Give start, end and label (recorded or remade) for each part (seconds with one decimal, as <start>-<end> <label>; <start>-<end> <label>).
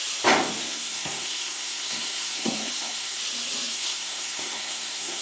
0.0-0.6 recorded; 0.6-3.2 remade; 3.2-3.7 recorded; 3.7-5.2 remade